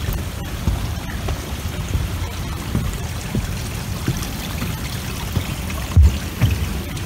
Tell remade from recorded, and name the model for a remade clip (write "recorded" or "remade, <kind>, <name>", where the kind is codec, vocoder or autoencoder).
remade, vocoder, BigVGAN v2